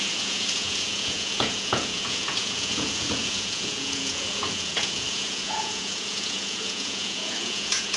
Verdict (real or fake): fake